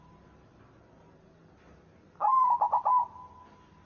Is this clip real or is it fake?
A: real